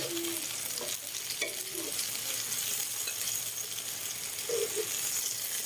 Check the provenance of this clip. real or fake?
real